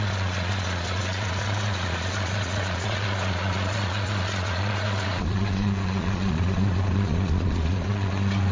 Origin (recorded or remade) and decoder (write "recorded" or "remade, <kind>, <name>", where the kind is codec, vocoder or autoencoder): remade, vocoder, Vocos